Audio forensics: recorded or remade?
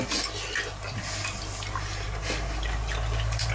recorded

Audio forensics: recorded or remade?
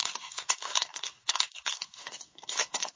remade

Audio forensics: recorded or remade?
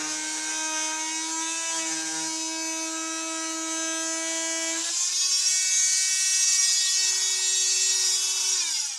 recorded